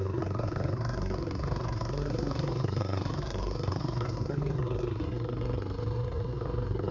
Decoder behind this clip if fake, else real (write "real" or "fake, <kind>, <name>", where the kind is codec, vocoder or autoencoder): fake, codec, SNAC